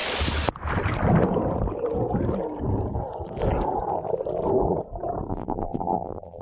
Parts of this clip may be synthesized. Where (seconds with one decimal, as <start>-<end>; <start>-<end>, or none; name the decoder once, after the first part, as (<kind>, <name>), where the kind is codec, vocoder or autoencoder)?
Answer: 5.3-6.4 (vocoder, BigVGAN v2)